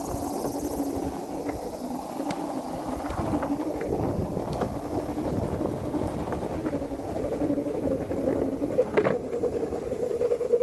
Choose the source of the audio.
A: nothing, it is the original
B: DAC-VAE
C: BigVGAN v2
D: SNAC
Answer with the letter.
A